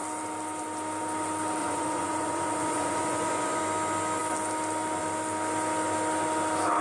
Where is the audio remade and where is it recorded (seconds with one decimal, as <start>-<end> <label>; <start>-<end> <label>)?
0.0-1.6 recorded; 1.6-3.6 remade; 3.6-6.8 recorded